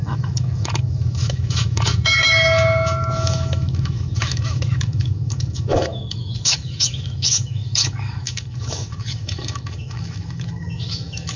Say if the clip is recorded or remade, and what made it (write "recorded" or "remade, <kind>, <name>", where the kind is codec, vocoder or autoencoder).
remade, autoencoder, DAC-VAE